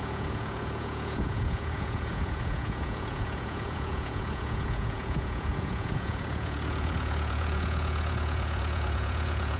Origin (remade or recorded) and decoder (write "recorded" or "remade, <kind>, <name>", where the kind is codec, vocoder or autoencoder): remade, vocoder, Vocos